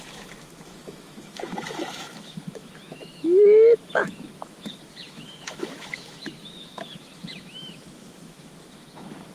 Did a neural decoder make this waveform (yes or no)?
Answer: yes